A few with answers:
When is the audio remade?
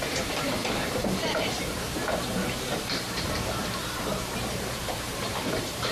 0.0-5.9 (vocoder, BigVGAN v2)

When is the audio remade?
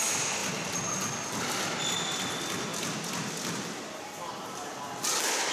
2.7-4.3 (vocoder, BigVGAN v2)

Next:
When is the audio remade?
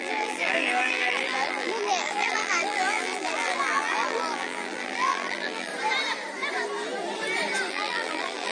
0.0-5.7 (vocoder, BigVGAN v2); 7.7-8.5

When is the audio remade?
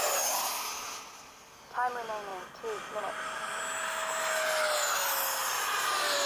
2.3-3.0 (vocoder, BigVGAN v2); 5.4-6.3